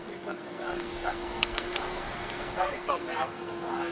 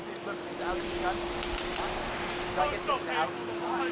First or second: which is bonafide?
second